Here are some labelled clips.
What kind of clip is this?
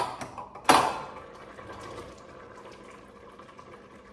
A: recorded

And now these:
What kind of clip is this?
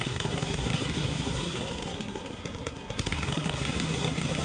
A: remade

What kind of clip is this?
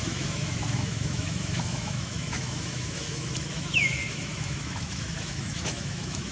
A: remade